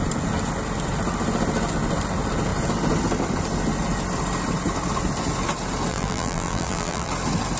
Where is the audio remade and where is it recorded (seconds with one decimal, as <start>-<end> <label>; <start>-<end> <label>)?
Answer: 0.0-5.9 recorded; 5.9-7.1 remade; 7.1-7.6 recorded

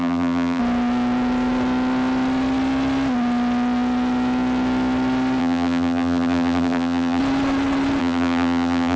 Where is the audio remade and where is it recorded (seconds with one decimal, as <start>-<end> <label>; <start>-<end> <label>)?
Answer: 0.0-0.6 remade; 0.6-5.4 recorded; 5.4-7.2 remade; 7.2-8.0 recorded; 8.0-9.0 remade

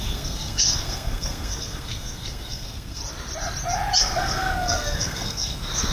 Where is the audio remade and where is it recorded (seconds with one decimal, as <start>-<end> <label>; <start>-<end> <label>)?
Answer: 0.0-3.0 remade; 3.0-4.0 recorded; 4.0-5.9 remade